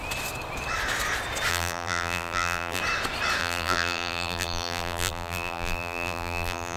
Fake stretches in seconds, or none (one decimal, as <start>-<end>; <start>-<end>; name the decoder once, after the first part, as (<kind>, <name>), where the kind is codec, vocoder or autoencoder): 1.5-2.8 (vocoder, BigVGAN v2); 3.4-6.8

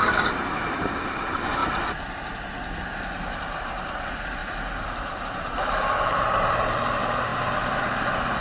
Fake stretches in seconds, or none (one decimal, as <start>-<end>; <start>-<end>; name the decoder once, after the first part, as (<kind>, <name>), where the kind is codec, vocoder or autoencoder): 0.0-1.6 (vocoder, BigVGAN v2); 3.6-4.4; 5.5-8.4

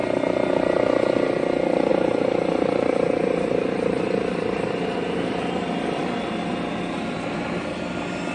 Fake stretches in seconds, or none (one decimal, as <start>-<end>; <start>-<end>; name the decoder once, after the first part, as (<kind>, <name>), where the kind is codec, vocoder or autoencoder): 1.9-6.0 (vocoder, BigVGAN v2)

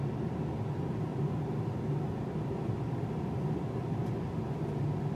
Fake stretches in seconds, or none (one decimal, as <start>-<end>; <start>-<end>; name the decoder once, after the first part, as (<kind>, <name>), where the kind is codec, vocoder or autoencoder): 1.1-4.1 (vocoder, BigVGAN v2)

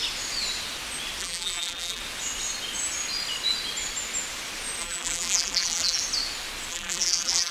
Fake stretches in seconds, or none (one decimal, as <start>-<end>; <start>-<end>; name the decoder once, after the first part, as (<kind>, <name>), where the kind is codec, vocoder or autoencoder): 1.2-2.0 (vocoder, BigVGAN v2); 4.8-6.0; 6.7-7.5

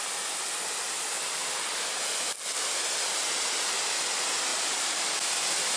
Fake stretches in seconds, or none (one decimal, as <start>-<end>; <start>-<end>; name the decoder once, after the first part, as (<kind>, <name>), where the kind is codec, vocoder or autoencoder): 4.5-5.0 (vocoder, BigVGAN v2)

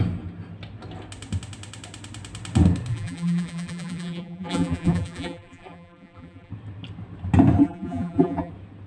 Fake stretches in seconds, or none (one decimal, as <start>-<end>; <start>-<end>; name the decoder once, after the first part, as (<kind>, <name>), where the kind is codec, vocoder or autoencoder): 2.9-6.5 (vocoder, BigVGAN v2); 7.6-8.5